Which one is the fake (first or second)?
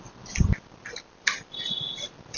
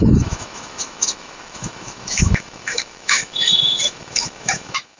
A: second